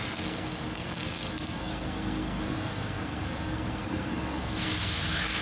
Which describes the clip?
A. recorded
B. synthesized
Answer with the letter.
B